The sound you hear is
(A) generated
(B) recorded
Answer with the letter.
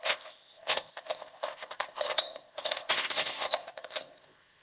A